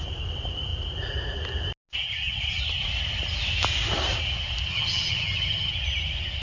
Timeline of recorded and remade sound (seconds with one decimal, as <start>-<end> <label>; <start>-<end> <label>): 0.0-4.7 recorded; 4.7-5.7 remade; 5.7-6.4 recorded